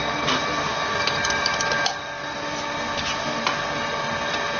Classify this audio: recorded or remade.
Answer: recorded